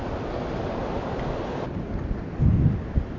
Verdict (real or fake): real